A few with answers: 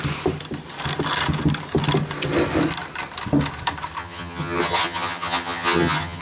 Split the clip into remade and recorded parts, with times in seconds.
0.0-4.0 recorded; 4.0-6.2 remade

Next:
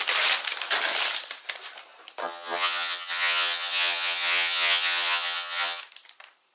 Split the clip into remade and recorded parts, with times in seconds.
0.0-2.2 recorded; 2.2-5.8 remade; 5.8-6.5 recorded

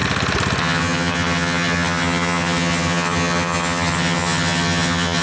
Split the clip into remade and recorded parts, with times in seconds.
0.0-0.6 recorded; 0.6-5.2 remade